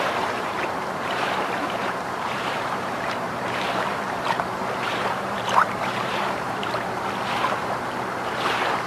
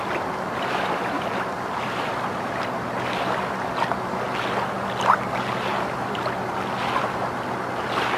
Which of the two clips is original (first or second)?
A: second